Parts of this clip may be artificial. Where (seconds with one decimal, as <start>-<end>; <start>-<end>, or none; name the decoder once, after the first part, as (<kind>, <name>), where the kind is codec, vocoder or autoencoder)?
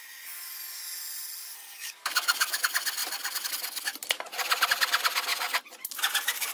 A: 1.7-2.6 (codec, DAC)